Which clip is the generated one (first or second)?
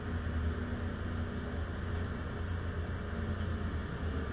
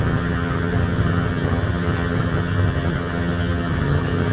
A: second